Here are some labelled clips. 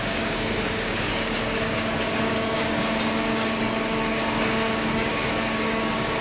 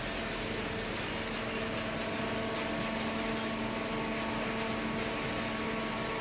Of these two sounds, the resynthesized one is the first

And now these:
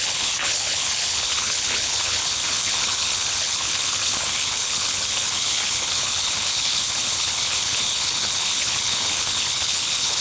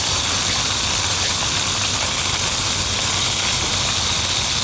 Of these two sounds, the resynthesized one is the first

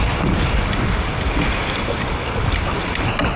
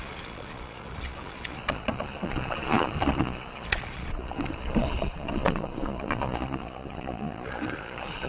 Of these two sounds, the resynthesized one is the second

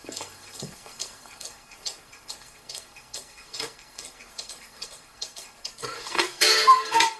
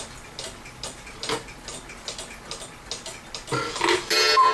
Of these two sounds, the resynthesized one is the first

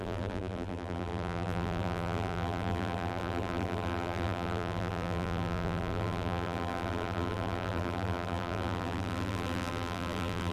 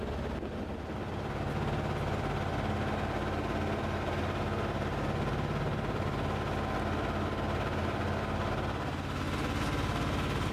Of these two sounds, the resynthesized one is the first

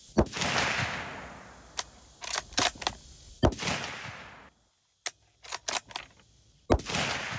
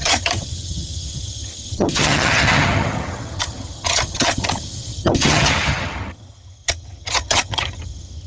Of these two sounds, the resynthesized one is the second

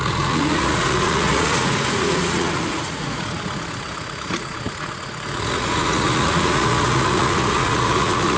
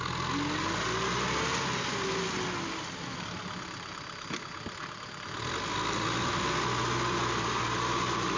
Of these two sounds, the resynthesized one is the first